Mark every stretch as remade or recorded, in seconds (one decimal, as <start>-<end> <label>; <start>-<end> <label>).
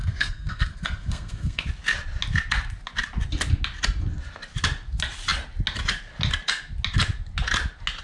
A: 0.0-1.6 remade; 1.6-8.0 recorded